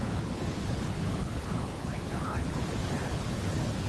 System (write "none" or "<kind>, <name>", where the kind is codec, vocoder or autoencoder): codec, HILCodec